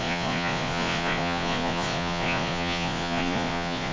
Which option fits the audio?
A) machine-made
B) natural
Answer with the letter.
A